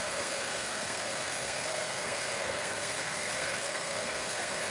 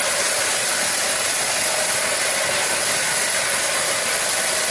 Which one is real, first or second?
second